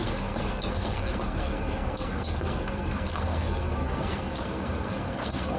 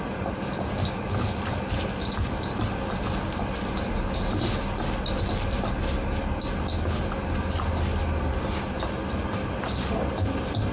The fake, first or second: first